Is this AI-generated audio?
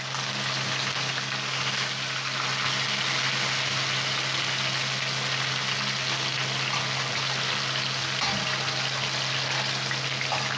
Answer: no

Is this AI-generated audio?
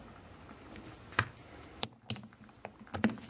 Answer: no